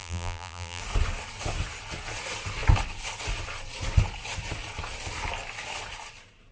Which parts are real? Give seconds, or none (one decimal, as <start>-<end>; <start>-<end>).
0.8-6.5